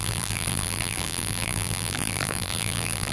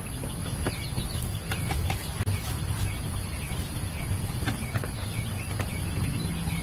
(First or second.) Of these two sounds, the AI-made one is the first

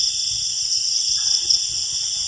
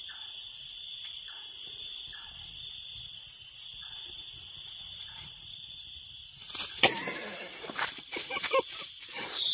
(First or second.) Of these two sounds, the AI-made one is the second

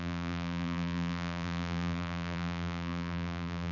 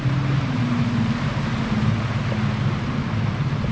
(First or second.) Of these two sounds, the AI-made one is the first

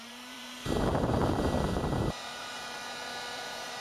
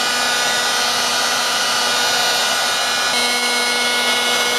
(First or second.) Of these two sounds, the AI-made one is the first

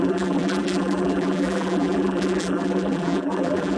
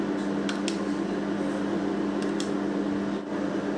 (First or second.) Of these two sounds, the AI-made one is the first